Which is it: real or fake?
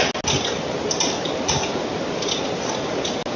real